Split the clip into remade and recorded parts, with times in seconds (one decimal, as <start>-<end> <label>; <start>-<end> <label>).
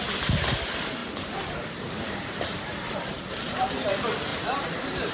0.0-1.0 recorded; 1.0-3.8 remade; 3.8-4.3 recorded; 4.3-5.1 remade